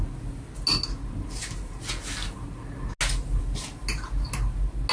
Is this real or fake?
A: real